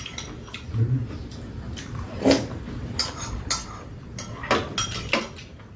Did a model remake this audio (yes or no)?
no